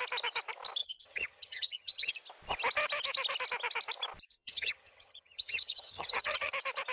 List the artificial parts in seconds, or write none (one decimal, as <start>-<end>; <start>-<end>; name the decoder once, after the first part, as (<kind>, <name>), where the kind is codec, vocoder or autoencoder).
0.8-2.1 (vocoder, HiFi-GAN); 4.3-6.5